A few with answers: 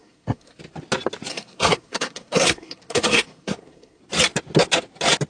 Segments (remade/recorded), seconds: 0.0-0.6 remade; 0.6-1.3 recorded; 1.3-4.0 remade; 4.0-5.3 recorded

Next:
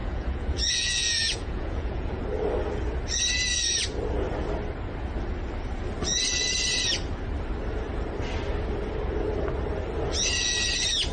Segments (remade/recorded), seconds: 0.0-2.2 remade; 2.2-11.1 recorded

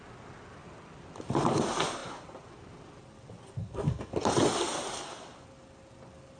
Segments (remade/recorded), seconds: 0.0-3.6 recorded; 3.6-4.1 remade; 4.1-6.4 recorded

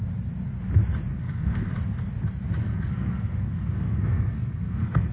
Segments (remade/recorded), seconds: 0.0-1.1 recorded; 1.1-1.7 remade; 1.7-2.6 recorded; 2.6-5.1 remade